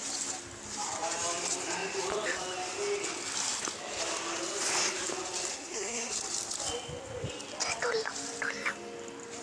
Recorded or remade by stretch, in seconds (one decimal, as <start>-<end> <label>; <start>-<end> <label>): 0.0-5.5 recorded; 5.5-6.1 remade; 6.1-9.4 recorded